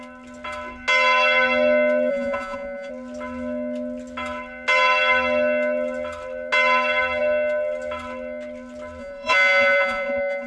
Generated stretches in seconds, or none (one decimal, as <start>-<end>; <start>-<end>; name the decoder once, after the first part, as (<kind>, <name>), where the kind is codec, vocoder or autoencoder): 2.1-2.9 (vocoder, Vocos); 9.0-10.5